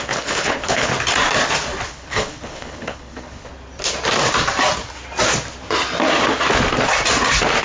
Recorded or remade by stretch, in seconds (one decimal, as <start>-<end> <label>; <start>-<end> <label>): 0.0-0.9 remade; 0.9-1.9 recorded; 1.9-3.5 remade; 3.5-7.6 recorded